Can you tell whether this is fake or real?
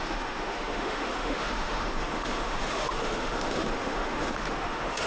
fake